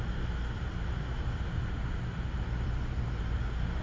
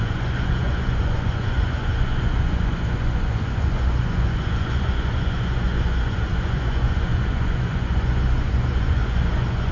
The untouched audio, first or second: first